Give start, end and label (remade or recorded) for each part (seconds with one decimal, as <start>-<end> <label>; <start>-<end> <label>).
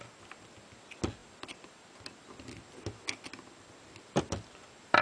0.0-5.0 recorded